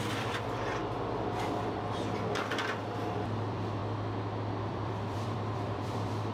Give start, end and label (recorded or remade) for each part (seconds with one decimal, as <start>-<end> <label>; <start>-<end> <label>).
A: 0.0-0.8 remade; 0.8-1.4 recorded; 1.4-3.8 remade; 3.8-4.7 recorded; 4.7-6.3 remade